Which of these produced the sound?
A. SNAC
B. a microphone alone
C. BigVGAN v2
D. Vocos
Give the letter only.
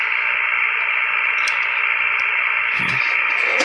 B